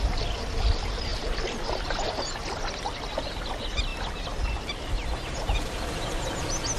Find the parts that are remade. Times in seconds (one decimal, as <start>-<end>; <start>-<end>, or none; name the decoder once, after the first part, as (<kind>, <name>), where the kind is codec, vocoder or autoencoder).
none